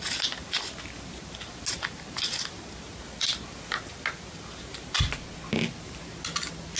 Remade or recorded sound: recorded